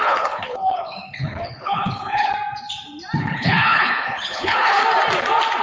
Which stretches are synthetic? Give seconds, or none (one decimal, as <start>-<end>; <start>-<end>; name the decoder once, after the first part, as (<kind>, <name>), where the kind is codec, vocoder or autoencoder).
0.0-2.3 (codec, HILCodec); 3.2-4.8